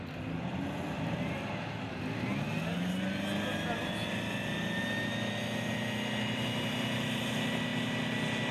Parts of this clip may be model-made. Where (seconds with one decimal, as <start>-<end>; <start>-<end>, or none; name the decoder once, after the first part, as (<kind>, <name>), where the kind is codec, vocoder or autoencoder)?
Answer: none